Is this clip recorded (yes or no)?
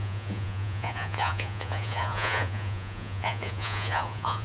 no